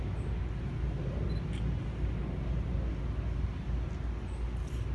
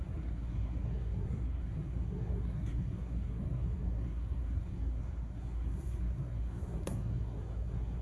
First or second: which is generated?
second